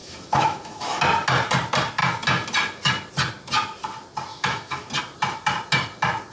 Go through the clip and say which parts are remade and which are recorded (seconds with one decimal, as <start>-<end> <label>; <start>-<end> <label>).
0.0-1.0 remade; 1.0-4.3 recorded; 4.3-4.9 remade; 4.9-6.3 recorded